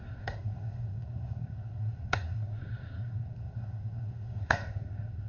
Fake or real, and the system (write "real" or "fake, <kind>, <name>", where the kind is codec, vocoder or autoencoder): fake, codec, SNAC